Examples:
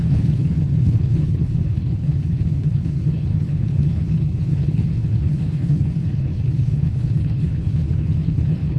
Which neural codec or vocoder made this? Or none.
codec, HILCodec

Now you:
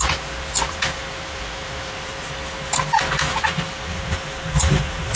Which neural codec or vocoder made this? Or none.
none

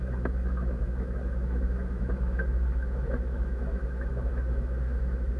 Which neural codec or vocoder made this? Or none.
autoencoder, DAC-VAE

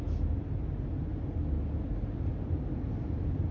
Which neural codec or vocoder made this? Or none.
none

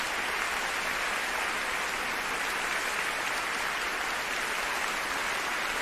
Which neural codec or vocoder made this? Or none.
none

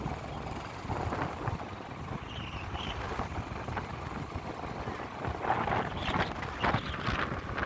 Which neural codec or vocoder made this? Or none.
none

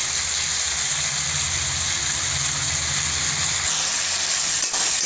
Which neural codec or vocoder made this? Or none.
none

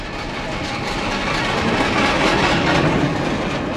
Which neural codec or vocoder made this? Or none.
none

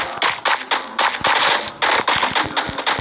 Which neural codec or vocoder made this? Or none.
none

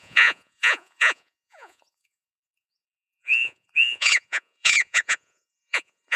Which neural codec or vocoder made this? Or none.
vocoder, Vocos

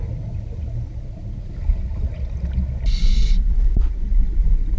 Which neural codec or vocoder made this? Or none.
none